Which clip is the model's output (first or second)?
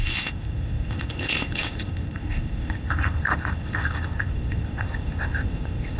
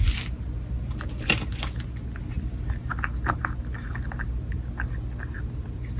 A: first